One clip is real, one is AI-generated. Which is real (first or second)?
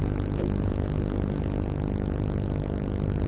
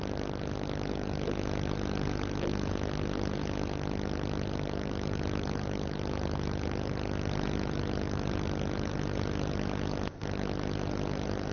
second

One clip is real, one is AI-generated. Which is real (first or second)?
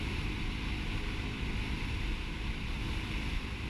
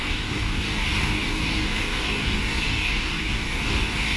first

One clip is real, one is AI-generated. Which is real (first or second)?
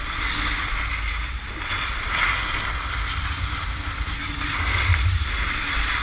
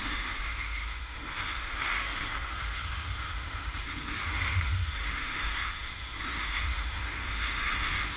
first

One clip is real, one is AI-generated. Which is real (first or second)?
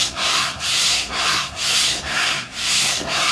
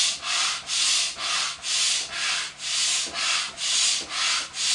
second